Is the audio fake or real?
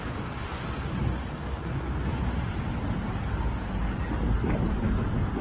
real